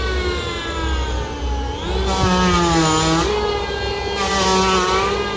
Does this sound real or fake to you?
real